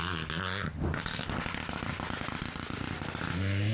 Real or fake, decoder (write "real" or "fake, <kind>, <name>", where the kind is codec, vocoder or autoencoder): real